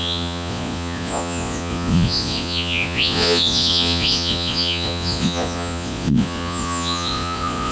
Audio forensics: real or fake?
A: fake